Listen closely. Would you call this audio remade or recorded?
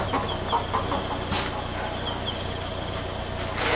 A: recorded